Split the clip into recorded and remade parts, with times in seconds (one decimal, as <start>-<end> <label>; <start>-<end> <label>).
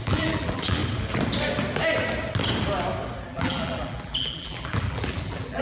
0.0-0.8 remade; 0.8-3.3 recorded; 3.3-5.6 remade